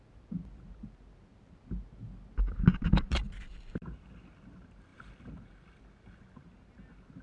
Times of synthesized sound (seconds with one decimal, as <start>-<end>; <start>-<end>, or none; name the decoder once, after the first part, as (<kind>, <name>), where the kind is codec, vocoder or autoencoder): none